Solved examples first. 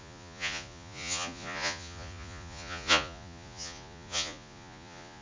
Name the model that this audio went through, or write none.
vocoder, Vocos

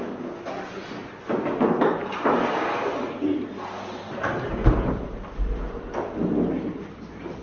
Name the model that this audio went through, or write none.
none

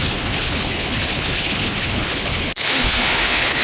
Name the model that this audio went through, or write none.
codec, HILCodec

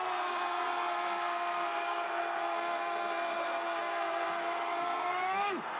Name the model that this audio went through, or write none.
codec, SNAC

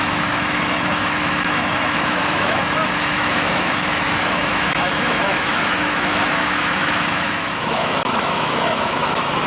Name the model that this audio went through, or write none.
autoencoder, DAC-VAE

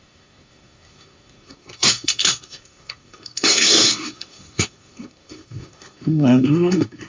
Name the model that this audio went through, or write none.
codec, SNAC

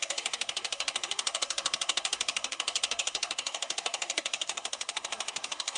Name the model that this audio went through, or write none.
codec, SNAC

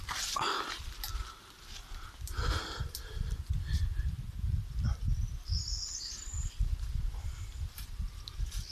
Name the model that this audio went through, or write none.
vocoder, BigVGAN v2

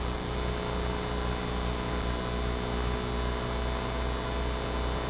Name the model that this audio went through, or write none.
none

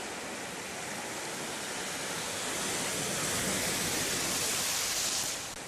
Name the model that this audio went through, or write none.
none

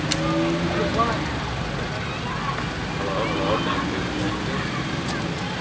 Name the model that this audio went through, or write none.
none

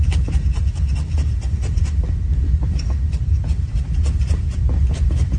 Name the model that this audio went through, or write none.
none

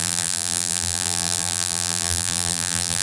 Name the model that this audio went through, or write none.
vocoder, BigVGAN v2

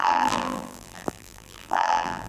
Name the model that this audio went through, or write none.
vocoder, BigVGAN v2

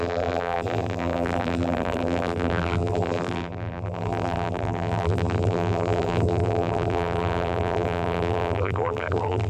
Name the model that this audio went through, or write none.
vocoder, BigVGAN v2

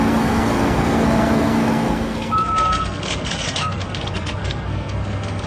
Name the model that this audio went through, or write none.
codec, SNAC